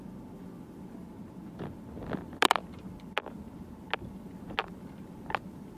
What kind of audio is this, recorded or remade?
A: recorded